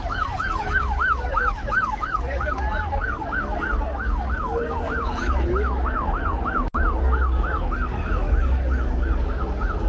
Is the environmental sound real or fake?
fake